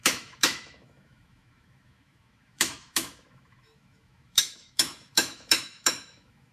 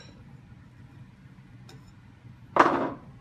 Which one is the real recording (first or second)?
second